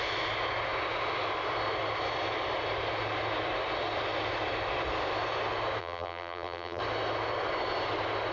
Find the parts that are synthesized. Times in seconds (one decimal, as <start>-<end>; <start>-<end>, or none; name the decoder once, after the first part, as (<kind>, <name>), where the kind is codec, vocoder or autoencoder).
5.8-6.8 (vocoder, BigVGAN v2)